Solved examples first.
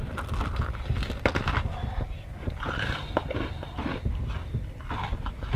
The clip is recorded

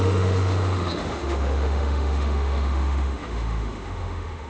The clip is remade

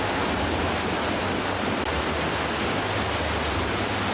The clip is recorded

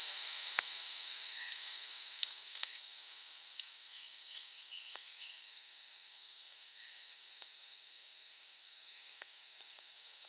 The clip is remade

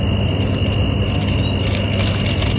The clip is recorded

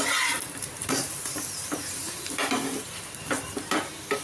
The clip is remade